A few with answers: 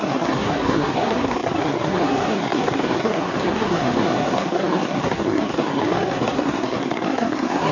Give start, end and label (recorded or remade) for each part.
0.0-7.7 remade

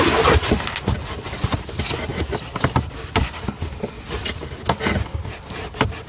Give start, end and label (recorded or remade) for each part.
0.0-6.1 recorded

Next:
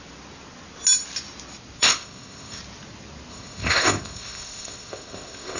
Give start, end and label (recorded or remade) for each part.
0.0-1.8 recorded; 1.8-2.6 remade; 2.6-3.3 recorded; 3.3-5.6 remade

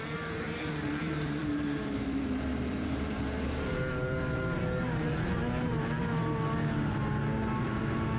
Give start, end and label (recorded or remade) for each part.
0.0-7.0 remade; 7.0-7.6 recorded; 7.6-8.2 remade

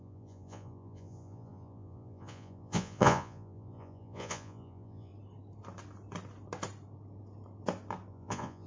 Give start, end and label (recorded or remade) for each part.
0.0-5.1 remade; 5.1-8.1 recorded; 8.1-8.7 remade

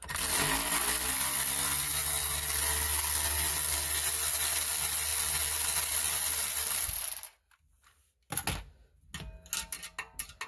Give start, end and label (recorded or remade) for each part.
0.0-10.5 recorded

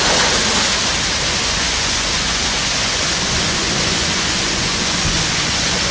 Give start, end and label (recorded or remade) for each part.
0.0-0.4 remade; 0.4-1.2 recorded; 1.2-5.9 remade